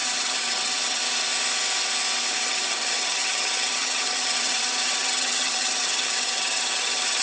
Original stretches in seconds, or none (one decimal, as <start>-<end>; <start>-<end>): 1.0-2.3